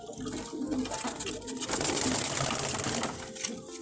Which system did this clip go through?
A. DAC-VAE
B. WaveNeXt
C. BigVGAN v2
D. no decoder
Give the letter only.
D